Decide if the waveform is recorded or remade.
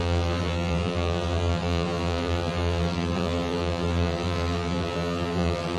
remade